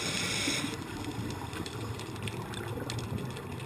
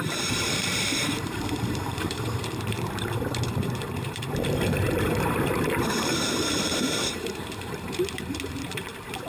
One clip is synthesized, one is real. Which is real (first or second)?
first